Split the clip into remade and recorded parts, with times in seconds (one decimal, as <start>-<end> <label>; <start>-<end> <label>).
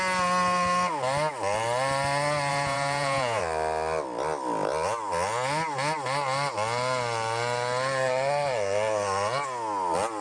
0.0-2.5 recorded; 2.5-3.4 remade; 3.4-10.2 recorded